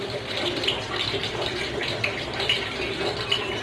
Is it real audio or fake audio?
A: real